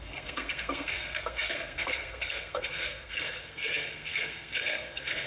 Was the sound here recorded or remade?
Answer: remade